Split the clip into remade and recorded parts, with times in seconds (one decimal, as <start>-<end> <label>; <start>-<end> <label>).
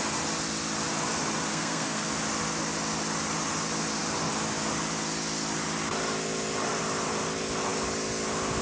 0.0-1.5 recorded; 1.5-2.1 remade; 2.1-8.6 recorded